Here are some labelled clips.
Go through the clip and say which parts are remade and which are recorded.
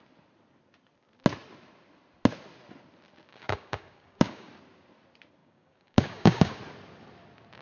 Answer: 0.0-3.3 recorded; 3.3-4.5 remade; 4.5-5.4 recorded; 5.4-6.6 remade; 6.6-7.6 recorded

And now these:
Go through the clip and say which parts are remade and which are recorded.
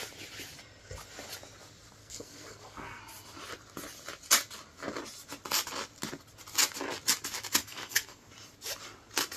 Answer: 0.0-2.0 recorded; 2.0-3.0 remade; 3.0-7.6 recorded; 7.6-8.3 remade; 8.3-9.4 recorded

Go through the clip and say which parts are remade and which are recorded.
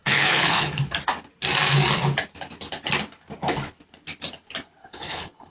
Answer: 0.0-0.8 remade; 0.8-4.8 recorded; 4.8-5.5 remade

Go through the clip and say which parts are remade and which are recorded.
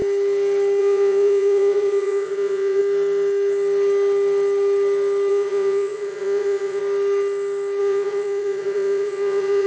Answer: 0.0-0.8 recorded; 0.8-2.8 remade; 2.8-5.3 recorded; 5.3-6.8 remade; 6.8-7.8 recorded; 7.8-9.7 remade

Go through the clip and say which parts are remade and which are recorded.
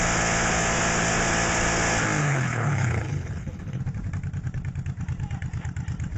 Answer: 0.0-2.2 recorded; 2.2-3.8 remade; 3.8-6.2 recorded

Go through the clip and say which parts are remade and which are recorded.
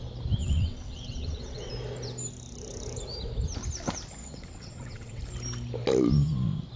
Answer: 0.0-0.4 recorded; 0.4-1.7 remade; 1.7-4.2 recorded; 4.2-5.2 remade; 5.2-6.8 recorded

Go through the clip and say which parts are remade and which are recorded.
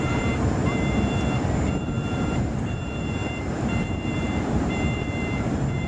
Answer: 0.0-5.9 remade